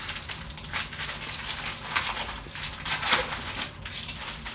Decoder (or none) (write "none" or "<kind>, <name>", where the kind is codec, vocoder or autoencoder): none